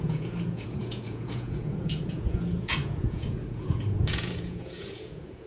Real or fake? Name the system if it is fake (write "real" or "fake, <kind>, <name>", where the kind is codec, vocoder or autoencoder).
fake, vocoder, Vocos